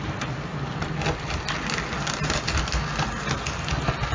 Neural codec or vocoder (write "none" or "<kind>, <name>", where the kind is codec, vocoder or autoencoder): none